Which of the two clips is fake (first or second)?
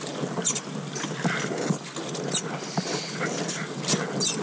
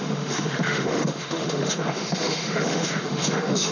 second